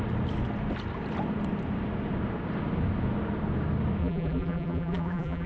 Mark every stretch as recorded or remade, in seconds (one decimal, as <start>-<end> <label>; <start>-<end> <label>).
0.0-4.0 recorded; 4.0-5.5 remade